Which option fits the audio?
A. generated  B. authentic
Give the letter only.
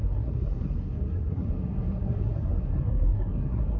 A